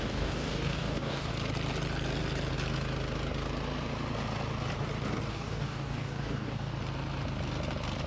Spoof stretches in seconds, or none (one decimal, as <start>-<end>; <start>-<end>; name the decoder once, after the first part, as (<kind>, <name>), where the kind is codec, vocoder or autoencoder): 0.0-1.3 (codec, DAC); 5.3-6.7